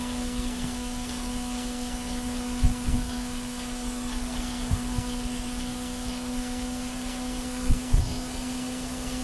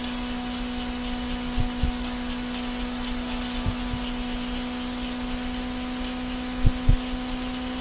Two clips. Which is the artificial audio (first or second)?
first